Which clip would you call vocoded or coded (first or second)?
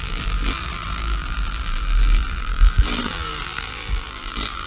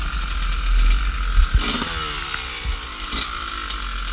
first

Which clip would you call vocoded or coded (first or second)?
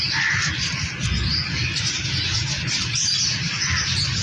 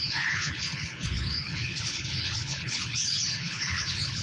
second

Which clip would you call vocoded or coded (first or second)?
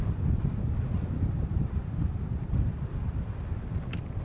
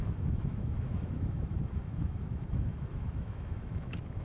second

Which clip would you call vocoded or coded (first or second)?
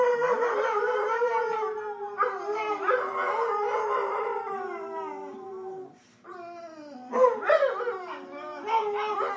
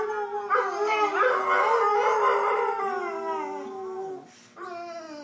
first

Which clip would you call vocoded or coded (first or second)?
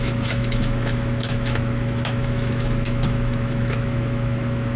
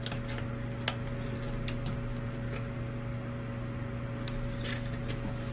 first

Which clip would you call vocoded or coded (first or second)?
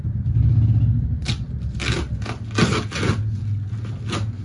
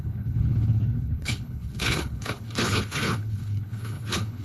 second